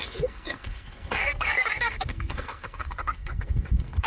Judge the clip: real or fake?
fake